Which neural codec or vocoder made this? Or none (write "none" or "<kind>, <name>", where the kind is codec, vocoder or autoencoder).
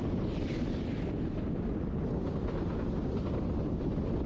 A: none